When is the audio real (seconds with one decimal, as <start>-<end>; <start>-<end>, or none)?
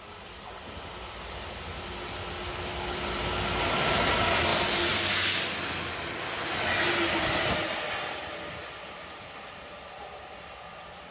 0.0-11.1